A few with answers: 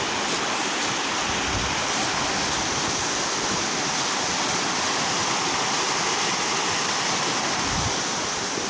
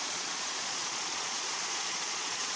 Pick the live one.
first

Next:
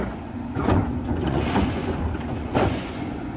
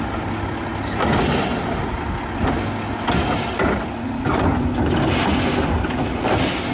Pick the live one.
second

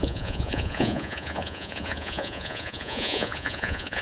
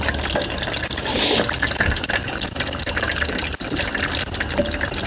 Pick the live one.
second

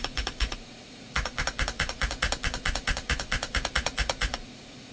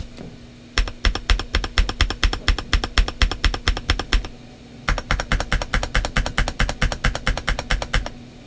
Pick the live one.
second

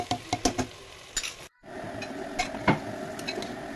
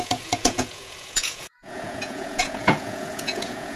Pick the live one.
first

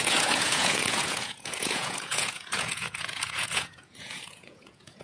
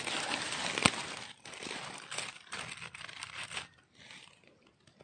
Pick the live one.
second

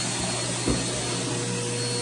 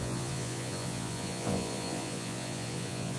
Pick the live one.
first